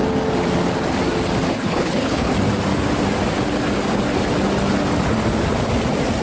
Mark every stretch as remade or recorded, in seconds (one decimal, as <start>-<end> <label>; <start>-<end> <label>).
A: 0.0-1.5 recorded; 1.5-2.3 remade; 2.3-6.2 recorded